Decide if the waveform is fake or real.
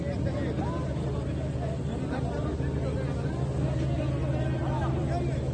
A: real